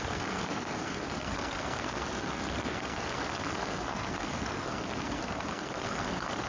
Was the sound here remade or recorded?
remade